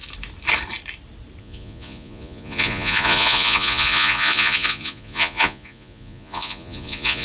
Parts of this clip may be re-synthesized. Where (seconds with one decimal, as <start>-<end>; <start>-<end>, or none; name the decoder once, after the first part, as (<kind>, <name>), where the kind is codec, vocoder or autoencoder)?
1.4-7.2 (vocoder, Vocos)